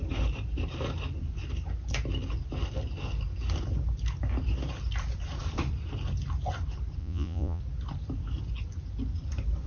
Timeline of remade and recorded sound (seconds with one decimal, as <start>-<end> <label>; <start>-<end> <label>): 0.0-7.0 recorded; 7.0-7.6 remade; 7.6-9.7 recorded